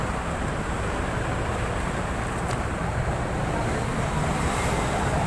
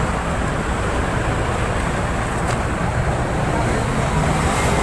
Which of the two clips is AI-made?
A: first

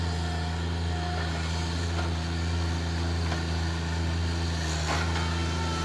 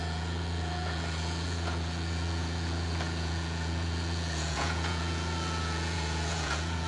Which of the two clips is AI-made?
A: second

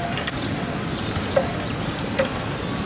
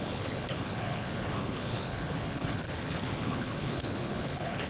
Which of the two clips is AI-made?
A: second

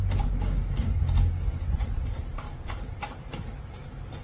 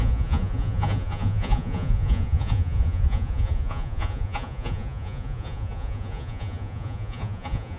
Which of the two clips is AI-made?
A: second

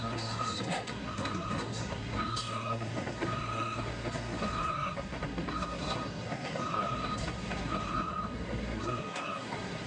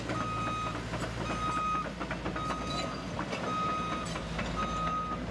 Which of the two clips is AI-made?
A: first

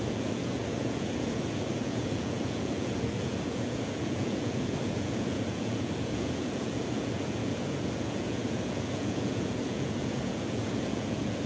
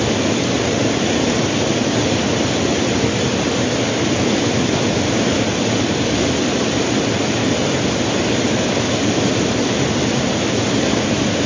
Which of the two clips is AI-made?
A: first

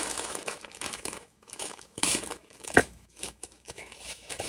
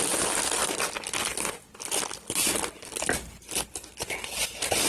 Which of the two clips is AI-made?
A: first